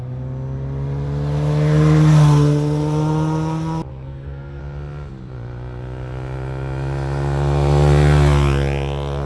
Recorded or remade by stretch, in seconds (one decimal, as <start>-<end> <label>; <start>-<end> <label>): 0.0-3.9 recorded; 3.9-4.6 remade; 4.6-9.3 recorded